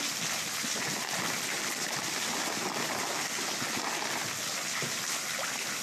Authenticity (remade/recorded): recorded